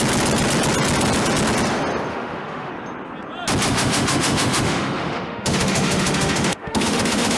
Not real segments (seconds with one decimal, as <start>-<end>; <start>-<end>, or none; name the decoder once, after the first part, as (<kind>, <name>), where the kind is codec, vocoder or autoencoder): 2.1-2.7 (autoencoder, DAC-VAE); 3.7-7.4